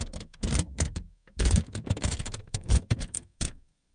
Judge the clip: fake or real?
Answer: fake